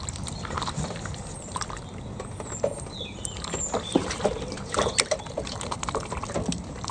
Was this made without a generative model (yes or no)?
yes